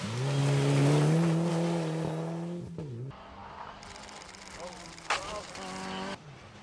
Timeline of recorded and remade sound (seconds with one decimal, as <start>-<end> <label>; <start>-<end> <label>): 0.0-6.6 recorded